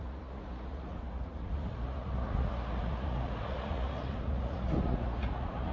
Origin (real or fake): fake